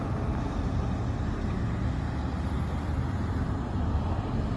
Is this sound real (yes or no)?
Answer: yes